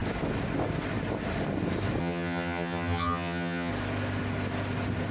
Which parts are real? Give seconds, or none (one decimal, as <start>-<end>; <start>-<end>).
0.0-2.0; 3.7-5.1